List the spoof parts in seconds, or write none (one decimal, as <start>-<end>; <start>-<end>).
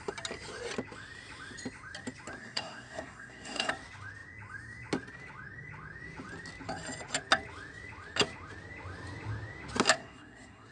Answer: 2.4-3.7; 10.0-10.7